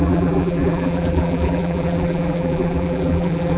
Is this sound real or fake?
fake